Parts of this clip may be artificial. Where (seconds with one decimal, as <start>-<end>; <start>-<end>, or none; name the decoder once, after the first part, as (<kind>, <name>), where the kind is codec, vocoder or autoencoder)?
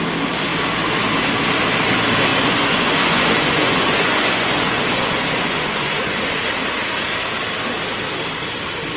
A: 2.3-6.5 (vocoder, Vocos)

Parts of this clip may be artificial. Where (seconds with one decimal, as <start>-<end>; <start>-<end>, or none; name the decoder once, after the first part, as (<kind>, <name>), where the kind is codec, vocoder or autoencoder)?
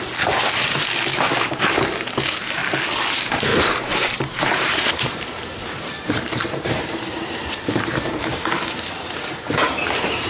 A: 0.0-1.1 (vocoder, BigVGAN v2); 2.0-2.6; 3.1-10.3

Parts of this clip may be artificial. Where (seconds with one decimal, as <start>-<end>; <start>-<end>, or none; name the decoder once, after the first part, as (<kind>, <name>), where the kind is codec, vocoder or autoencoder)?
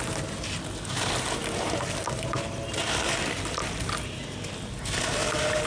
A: none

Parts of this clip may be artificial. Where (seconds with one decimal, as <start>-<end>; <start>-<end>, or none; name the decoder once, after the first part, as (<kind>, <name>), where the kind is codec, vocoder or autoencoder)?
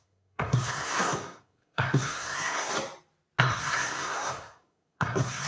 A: 0.0-2.7 (codec, SNAC); 3.4-5.5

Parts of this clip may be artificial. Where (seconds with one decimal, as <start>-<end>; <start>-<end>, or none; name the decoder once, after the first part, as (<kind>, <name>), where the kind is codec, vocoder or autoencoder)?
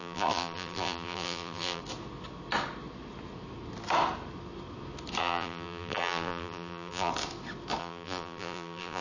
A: 0.0-1.8 (vocoder, BigVGAN v2); 5.2-7.1; 7.8-9.0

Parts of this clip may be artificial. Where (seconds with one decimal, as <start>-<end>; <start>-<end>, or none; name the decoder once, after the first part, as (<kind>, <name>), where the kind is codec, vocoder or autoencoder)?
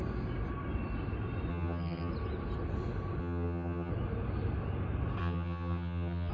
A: 1.5-2.1 (vocoder, HiFi-GAN); 3.2-3.9; 5.2-6.3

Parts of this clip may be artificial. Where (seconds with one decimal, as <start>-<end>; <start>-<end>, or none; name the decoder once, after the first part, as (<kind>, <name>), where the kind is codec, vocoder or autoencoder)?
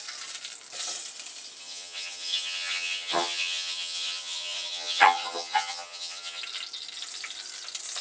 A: 1.6-6.4 (vocoder, HiFi-GAN)